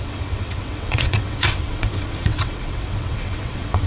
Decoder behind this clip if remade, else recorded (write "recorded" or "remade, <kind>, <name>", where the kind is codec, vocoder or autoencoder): remade, vocoder, WaveNeXt